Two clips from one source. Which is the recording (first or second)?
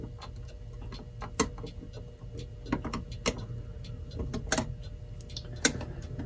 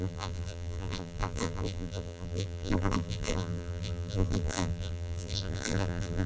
first